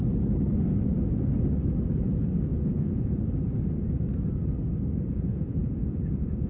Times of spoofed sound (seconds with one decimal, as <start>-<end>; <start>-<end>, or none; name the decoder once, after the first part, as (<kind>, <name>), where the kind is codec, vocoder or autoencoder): 2.5-3.1 (vocoder, Vocos); 5.1-6.5